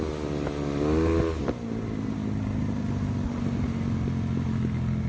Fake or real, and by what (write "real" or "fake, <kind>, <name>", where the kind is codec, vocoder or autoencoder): real